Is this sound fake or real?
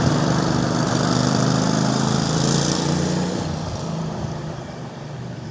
fake